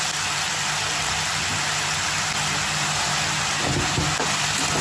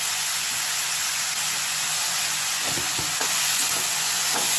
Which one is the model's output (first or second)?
second